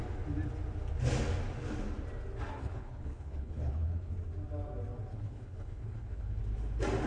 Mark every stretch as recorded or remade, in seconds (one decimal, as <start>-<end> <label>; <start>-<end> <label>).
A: 0.0-2.6 recorded; 2.6-4.1 remade; 4.1-5.1 recorded; 5.1-6.4 remade; 6.4-7.1 recorded